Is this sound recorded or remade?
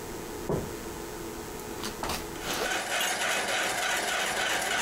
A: recorded